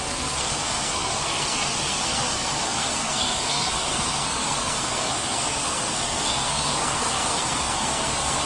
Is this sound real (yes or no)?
no